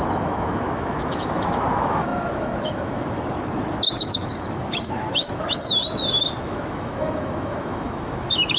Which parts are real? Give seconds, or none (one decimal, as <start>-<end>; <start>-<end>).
5.8-6.4